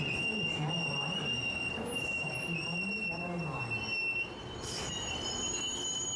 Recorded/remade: recorded